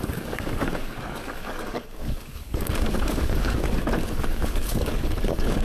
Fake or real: fake